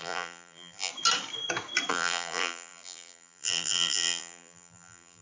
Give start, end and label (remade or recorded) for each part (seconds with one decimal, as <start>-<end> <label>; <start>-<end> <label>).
0.0-0.9 remade; 0.9-1.9 recorded; 1.9-5.2 remade